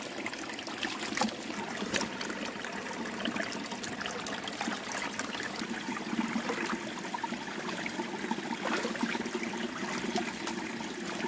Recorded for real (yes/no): yes